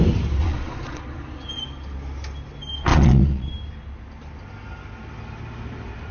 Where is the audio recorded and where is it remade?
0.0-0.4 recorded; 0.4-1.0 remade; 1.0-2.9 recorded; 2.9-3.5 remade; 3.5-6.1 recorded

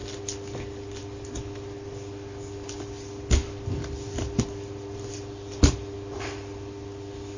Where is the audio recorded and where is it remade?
0.0-7.4 recorded